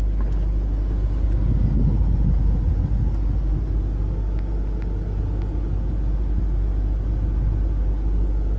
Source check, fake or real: real